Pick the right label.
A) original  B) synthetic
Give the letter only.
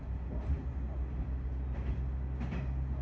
A